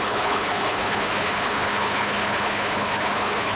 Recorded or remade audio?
remade